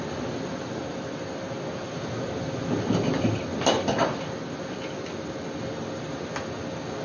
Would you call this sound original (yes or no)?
yes